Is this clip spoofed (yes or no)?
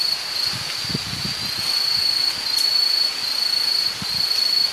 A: no